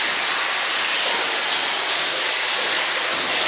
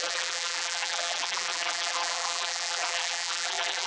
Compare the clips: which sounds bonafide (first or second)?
first